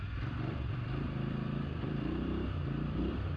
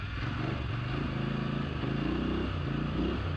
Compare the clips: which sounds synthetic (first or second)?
first